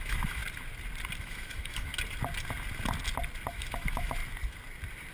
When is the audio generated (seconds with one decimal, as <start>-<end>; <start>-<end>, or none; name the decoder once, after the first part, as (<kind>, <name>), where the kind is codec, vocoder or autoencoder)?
0.0-0.4 (autoencoder, DAC-VAE); 1.2-1.9; 3.5-4.2